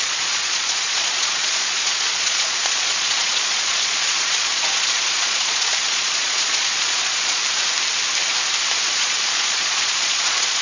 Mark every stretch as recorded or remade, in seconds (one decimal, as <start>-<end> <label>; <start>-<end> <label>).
0.0-7.4 remade; 7.4-8.9 recorded; 8.9-10.6 remade

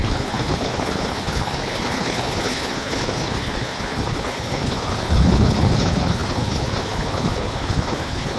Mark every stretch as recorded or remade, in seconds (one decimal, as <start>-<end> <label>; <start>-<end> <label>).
0.0-8.4 remade

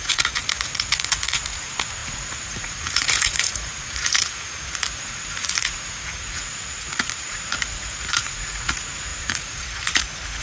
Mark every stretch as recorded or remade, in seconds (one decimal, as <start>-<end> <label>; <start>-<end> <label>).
0.0-10.4 remade

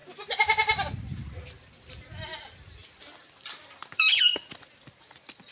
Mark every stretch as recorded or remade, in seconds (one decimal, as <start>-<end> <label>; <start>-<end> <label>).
0.0-3.3 recorded; 3.3-5.5 remade

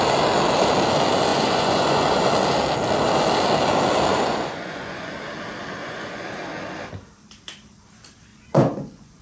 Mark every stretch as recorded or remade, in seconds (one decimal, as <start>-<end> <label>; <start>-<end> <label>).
0.0-1.3 recorded; 1.3-2.3 remade; 2.3-4.1 recorded; 4.1-5.2 remade; 5.2-5.8 recorded; 5.8-6.3 remade; 6.3-8.3 recorded; 8.3-9.2 remade

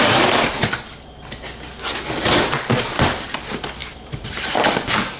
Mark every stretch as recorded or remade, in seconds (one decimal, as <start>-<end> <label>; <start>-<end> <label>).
0.0-0.7 remade; 0.7-2.1 recorded; 2.1-5.2 remade